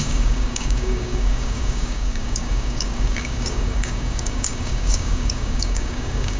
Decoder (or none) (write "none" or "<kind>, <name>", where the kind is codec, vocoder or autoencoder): codec, DAC